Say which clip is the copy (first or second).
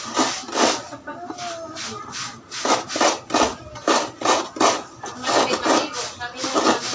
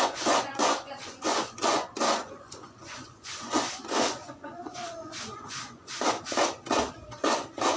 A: second